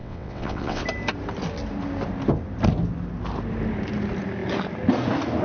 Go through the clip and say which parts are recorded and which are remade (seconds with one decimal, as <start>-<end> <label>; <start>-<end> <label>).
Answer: 0.0-0.8 remade; 0.8-5.4 recorded